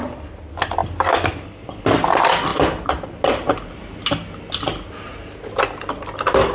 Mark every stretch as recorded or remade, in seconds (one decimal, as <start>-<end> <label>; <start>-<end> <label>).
0.0-2.5 recorded; 2.5-3.7 remade; 3.7-6.5 recorded